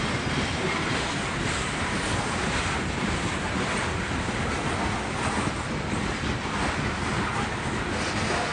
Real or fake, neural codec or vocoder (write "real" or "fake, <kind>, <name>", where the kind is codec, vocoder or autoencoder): real